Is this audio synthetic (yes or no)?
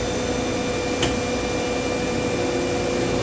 no